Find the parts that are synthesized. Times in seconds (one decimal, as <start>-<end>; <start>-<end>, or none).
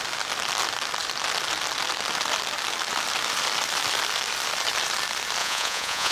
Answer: 5.4-6.1